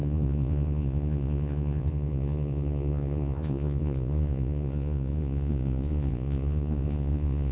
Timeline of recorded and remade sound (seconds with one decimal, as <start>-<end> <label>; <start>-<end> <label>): 0.0-7.5 remade